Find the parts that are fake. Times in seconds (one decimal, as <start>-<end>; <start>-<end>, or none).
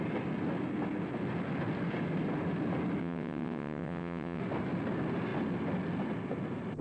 3.0-4.4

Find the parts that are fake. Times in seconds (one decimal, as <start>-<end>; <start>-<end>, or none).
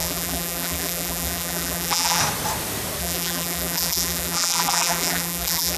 0.0-2.2; 3.0-5.8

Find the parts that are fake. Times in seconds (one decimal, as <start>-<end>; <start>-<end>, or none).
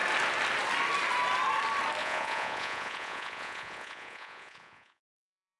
2.0-5.6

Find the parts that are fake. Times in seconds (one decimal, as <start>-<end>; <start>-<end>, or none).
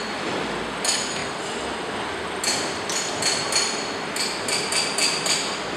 none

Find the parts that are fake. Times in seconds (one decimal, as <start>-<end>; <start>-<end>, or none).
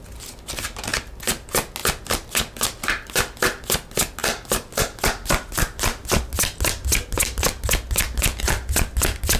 1.8-2.3